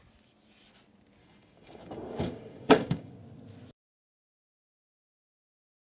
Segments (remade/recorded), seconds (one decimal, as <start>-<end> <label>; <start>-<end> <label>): 0.0-1.2 recorded; 1.2-3.1 remade; 3.1-5.8 recorded